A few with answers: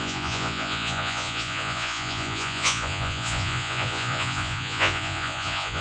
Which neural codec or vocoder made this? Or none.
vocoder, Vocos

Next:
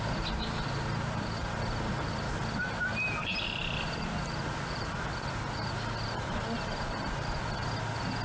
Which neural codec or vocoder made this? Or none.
none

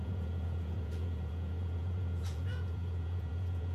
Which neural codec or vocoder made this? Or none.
vocoder, Vocos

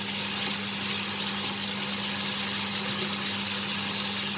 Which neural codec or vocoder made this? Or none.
none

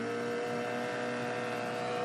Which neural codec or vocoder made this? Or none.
none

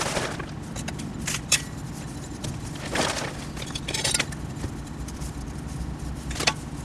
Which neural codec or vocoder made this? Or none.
none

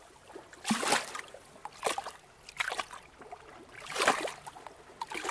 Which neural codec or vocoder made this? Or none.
none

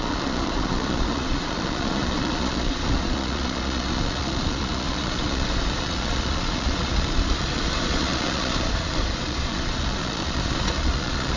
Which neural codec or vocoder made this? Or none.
vocoder, Vocos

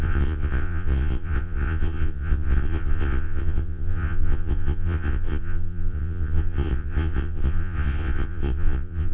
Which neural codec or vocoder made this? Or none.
vocoder, Vocos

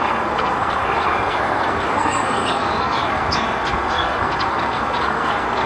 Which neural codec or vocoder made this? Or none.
codec, SNAC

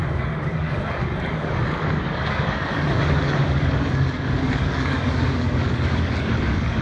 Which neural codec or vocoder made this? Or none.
codec, DAC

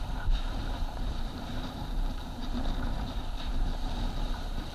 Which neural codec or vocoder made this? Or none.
vocoder, BigVGAN v2